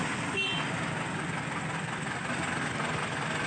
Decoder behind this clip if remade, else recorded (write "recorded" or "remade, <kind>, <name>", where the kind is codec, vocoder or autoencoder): recorded